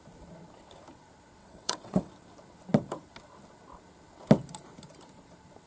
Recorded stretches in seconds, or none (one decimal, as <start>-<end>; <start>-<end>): 0.0-1.4; 2.1-5.7